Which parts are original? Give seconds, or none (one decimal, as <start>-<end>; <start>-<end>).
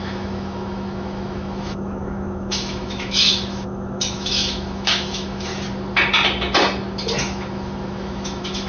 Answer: 5.5-7.2